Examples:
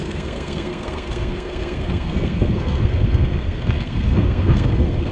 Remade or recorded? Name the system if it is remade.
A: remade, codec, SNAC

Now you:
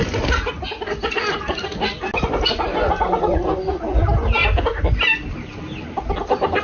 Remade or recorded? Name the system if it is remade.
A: recorded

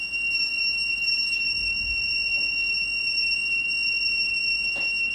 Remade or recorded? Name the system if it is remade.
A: remade, vocoder, BigVGAN v2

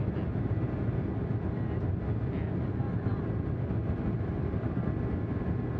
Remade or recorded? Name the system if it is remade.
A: recorded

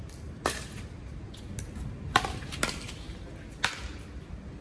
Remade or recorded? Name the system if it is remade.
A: recorded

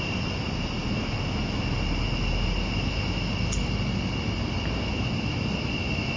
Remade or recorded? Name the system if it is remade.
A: recorded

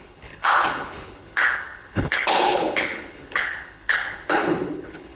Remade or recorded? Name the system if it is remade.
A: remade, codec, HILCodec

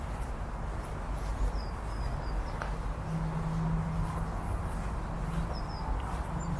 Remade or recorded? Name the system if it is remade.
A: recorded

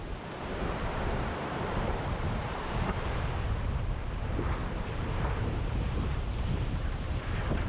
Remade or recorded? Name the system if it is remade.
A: remade, vocoder, BigVGAN v2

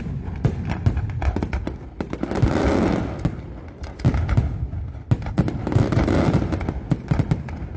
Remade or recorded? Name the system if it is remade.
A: recorded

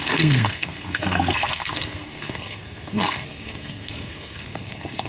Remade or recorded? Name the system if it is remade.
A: remade, codec, SNAC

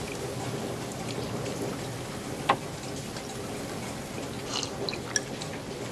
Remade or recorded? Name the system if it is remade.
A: recorded